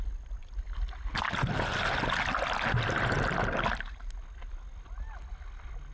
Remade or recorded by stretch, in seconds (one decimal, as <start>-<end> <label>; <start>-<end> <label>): 0.0-5.9 recorded